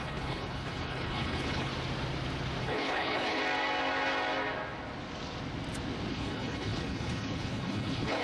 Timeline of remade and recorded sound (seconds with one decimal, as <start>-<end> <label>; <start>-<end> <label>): 0.0-1.7 remade; 1.7-2.6 recorded; 2.6-3.4 remade; 3.4-6.1 recorded; 6.1-8.2 remade